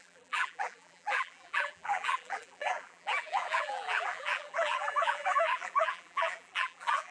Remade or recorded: remade